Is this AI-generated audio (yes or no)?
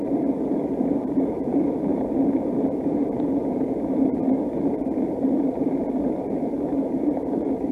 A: yes